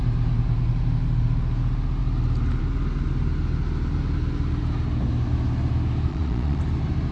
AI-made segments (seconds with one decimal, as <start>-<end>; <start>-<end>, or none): 6.1-6.6